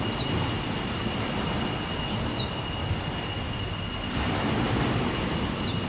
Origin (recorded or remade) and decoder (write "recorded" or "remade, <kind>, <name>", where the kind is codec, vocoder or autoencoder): recorded